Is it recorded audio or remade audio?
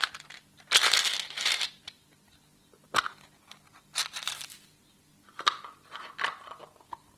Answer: recorded